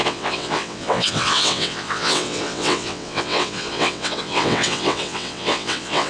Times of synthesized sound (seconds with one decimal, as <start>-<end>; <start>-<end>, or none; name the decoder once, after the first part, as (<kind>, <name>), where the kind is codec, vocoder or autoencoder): 0.0-6.1 (vocoder, WaveNeXt)